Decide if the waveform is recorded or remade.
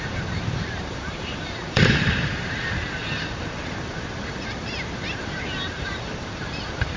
remade